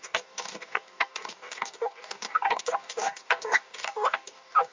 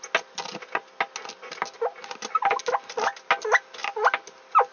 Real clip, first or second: second